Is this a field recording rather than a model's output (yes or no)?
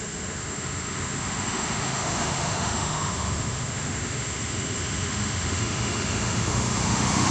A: no